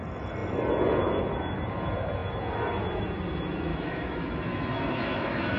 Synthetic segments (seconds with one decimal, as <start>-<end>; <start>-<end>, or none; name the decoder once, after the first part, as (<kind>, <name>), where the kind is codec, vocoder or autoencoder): 3.7-5.6 (autoencoder, DAC-VAE)